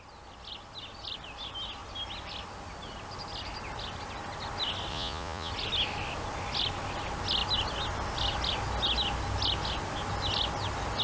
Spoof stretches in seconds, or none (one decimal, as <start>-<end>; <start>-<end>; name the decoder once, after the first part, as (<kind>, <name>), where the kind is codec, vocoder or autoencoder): 4.9-5.5 (vocoder, Vocos)